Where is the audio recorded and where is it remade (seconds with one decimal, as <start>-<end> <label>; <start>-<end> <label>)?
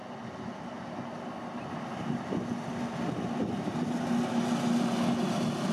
0.0-5.7 recorded